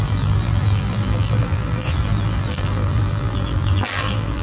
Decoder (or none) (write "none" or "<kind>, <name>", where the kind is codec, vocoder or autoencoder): vocoder, BigVGAN v2